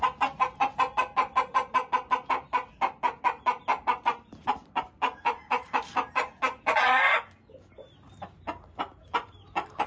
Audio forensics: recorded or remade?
recorded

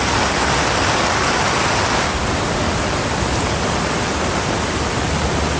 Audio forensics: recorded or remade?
recorded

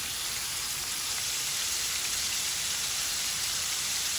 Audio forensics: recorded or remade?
remade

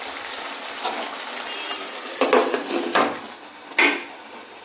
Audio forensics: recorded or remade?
recorded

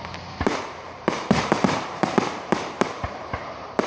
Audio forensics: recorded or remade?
remade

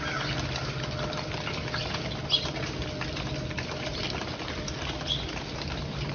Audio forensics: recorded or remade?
recorded